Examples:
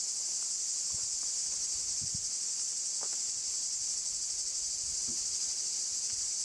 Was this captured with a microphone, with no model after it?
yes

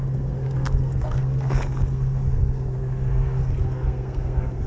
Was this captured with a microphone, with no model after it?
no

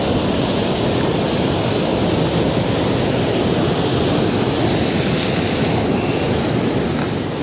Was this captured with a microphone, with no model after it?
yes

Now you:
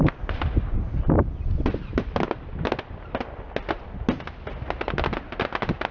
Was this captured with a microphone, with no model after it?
yes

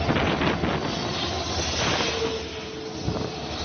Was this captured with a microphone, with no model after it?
yes